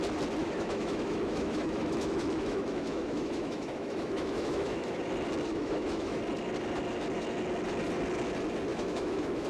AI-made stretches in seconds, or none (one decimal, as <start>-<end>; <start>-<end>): 0.4-5.0; 5.5-6.2; 8.7-9.5